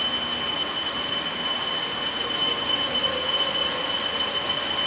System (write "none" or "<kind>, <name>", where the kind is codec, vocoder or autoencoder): none